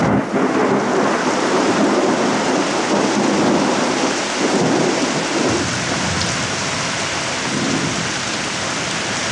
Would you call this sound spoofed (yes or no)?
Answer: no